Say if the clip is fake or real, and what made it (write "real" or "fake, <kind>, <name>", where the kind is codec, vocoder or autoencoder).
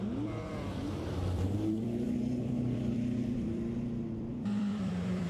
fake, vocoder, BigVGAN v2